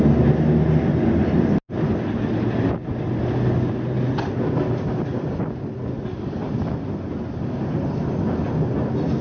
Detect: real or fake real